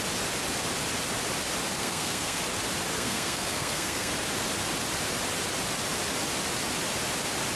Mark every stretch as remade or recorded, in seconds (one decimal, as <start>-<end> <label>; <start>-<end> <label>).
0.0-1.8 recorded; 1.8-2.4 remade; 2.4-2.9 recorded; 2.9-4.1 remade; 4.1-7.6 recorded